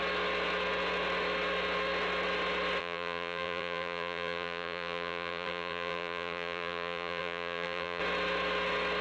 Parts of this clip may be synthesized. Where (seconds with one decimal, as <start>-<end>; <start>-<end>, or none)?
2.8-8.0